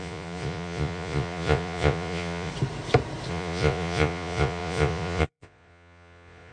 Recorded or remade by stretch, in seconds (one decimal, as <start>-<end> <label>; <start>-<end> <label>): 0.0-2.5 remade; 2.5-3.3 recorded; 3.3-6.5 remade